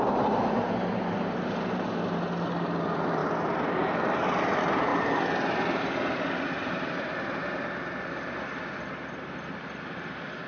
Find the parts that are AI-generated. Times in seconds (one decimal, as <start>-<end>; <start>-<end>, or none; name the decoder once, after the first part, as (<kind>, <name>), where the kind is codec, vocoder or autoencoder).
0.0-4.9 (vocoder, BigVGAN v2); 6.5-10.5